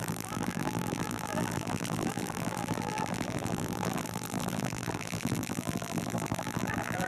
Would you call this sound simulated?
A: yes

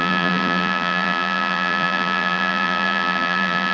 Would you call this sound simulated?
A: yes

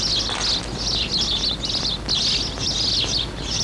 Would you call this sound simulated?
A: no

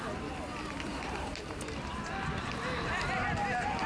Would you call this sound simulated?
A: no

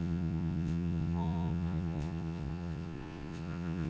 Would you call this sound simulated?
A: yes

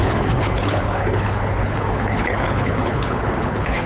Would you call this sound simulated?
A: yes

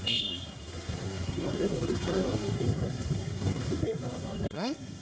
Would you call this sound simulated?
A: yes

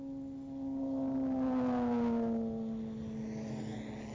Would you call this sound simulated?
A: no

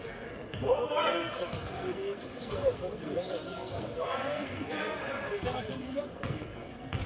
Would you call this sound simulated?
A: yes